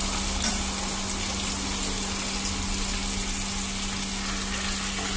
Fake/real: real